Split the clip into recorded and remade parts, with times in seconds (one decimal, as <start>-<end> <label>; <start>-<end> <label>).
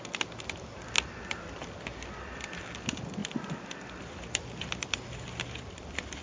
0.0-6.2 recorded